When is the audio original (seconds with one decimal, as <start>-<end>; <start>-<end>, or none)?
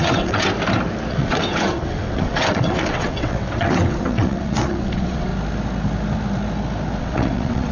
0.5-1.1; 5.3-7.0